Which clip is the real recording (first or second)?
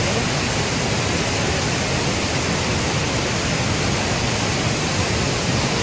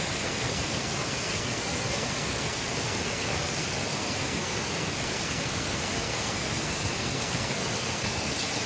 first